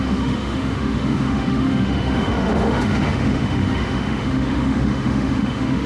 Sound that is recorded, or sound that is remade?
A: remade